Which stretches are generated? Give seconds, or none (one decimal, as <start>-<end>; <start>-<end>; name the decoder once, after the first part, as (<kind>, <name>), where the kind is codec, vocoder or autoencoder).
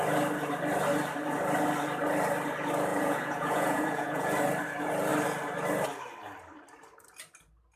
2.9-4.3 (vocoder, Vocos)